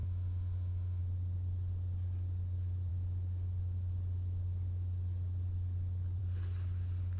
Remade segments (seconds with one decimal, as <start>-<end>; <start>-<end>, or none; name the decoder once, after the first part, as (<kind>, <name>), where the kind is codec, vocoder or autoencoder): 0.0-1.0 (autoencoder, DAC-VAE)